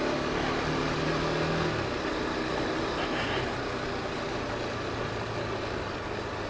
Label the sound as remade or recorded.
recorded